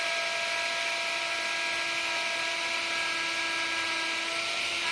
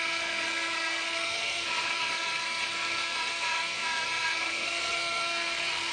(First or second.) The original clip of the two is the first